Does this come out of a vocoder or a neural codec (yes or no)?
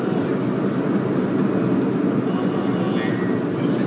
no